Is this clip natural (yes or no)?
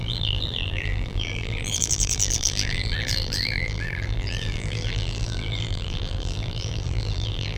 no